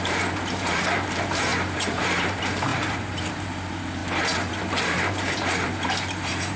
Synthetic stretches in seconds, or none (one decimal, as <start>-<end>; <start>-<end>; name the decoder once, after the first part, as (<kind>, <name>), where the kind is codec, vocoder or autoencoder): 0.0-4.0 (vocoder, BigVGAN v2); 4.5-6.6